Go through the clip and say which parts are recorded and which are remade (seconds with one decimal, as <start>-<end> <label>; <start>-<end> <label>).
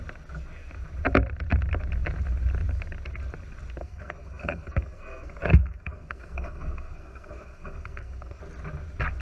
0.0-3.8 recorded; 3.8-8.4 remade; 8.4-9.2 recorded